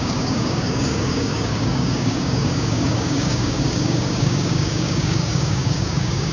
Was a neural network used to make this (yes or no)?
yes